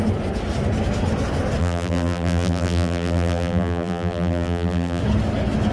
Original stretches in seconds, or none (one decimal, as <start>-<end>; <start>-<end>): 0.0-1.6; 5.0-5.7